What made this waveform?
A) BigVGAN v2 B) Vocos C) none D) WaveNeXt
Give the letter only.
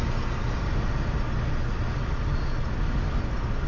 C